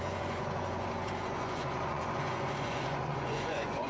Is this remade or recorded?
remade